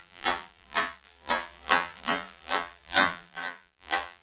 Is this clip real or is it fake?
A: fake